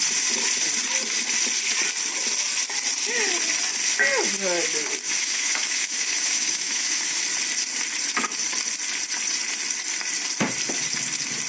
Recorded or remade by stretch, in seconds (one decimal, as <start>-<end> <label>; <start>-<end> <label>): 0.0-5.0 recorded; 5.0-7.2 remade; 7.2-11.5 recorded